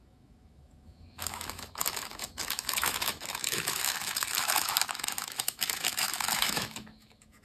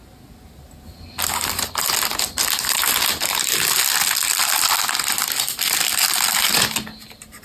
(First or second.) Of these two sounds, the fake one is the first